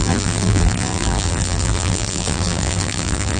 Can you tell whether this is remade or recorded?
remade